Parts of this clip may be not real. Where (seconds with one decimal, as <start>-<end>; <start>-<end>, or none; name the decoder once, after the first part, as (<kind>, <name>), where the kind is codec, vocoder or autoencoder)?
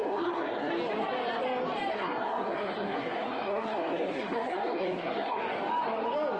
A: 0.0-0.7 (codec, SNAC); 1.9-5.4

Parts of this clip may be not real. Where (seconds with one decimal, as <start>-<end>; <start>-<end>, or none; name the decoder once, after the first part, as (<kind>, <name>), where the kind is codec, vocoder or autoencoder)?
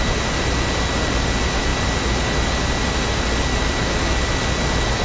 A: none